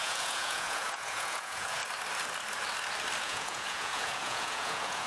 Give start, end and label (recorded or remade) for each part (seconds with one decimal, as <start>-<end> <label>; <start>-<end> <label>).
0.0-1.8 remade; 1.8-3.2 recorded; 3.2-5.1 remade